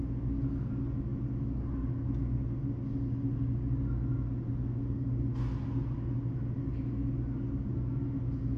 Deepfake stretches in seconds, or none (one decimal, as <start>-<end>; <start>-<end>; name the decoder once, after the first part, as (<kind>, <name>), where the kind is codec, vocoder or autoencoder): 4.6-5.1 (codec, SNAC)